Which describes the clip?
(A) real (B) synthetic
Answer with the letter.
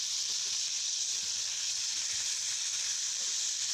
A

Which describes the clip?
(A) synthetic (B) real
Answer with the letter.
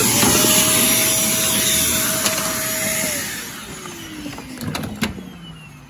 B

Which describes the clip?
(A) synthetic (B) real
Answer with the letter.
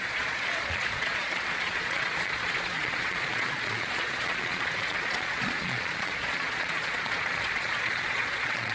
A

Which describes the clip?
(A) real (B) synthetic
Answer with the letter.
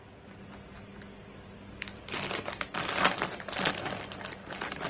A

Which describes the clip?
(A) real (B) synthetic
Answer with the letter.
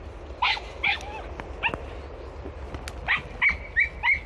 A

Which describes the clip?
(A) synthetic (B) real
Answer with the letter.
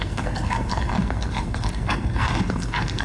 A